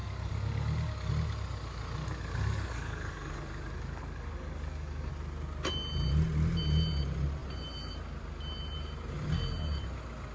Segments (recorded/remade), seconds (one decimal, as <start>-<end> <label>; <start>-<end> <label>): 0.0-1.1 remade; 1.1-2.0 recorded; 2.0-5.1 remade; 5.1-10.3 recorded